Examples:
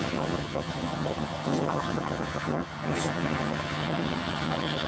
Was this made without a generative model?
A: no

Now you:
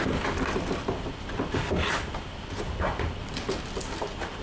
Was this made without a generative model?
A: yes